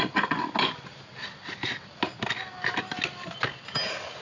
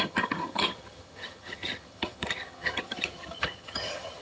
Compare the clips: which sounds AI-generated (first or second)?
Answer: second